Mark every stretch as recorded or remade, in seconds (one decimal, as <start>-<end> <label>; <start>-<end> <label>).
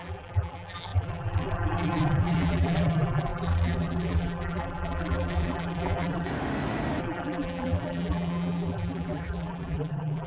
0.0-6.3 remade; 6.3-7.0 recorded; 7.0-10.3 remade